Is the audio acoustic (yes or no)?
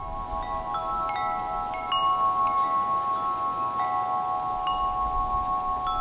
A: yes